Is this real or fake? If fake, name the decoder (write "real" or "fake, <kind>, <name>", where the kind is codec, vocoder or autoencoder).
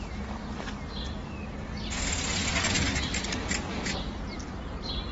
real